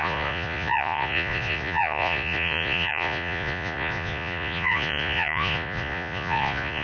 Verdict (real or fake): fake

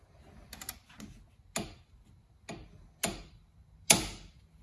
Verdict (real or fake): real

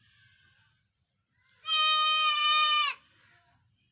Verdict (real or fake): real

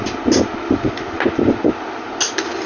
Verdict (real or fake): real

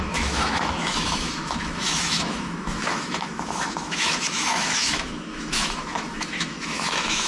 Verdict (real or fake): fake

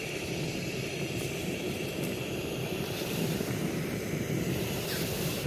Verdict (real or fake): fake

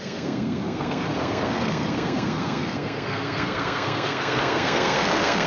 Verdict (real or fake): fake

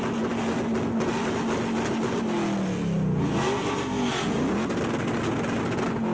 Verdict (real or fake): real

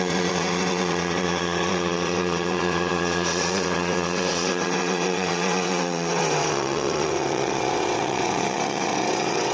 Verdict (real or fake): fake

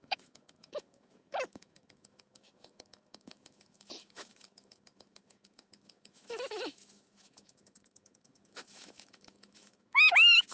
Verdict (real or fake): fake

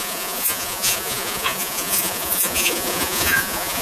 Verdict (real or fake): fake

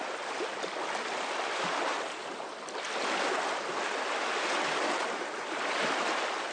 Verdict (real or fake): real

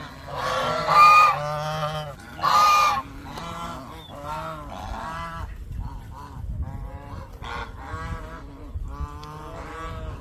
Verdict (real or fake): real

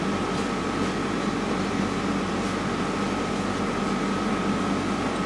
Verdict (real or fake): real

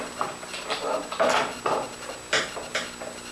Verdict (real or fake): real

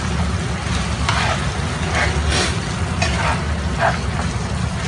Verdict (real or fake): real